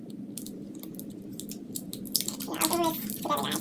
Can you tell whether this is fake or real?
real